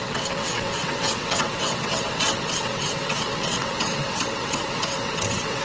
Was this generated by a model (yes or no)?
yes